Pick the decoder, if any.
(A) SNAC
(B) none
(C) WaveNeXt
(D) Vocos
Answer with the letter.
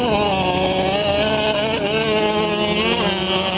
B